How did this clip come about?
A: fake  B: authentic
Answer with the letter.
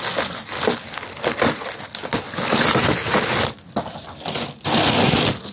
B